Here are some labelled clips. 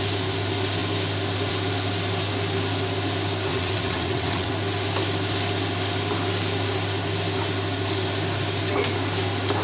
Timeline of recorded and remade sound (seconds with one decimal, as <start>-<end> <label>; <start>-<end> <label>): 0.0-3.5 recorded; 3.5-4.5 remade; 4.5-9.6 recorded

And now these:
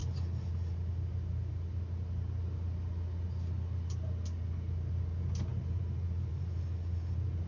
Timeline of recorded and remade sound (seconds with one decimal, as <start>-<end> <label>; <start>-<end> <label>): 0.0-7.5 recorded

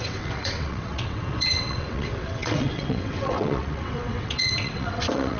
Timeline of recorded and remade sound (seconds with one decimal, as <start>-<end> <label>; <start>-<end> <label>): 0.0-5.4 remade

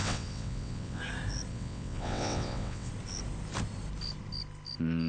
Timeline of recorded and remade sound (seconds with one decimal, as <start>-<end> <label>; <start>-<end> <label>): 0.0-1.0 remade; 1.0-1.5 recorded; 1.5-2.9 remade; 2.9-5.1 recorded